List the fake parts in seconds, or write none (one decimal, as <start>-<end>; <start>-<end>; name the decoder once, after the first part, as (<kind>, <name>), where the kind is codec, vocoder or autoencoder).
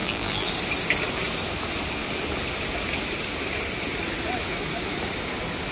0.0-0.5 (vocoder, BigVGAN v2)